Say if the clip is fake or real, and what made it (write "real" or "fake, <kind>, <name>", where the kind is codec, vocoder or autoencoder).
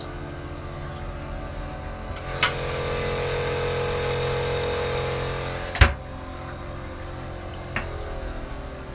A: real